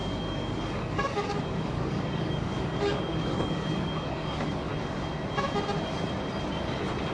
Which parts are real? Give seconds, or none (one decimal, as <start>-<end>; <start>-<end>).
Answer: 4.7-7.1